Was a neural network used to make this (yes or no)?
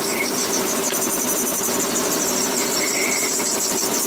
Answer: yes